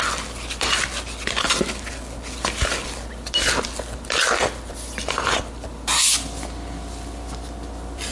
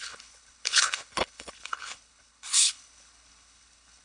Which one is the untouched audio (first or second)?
first